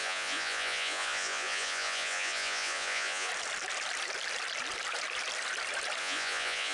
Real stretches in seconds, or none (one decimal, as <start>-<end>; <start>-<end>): 3.3-6.0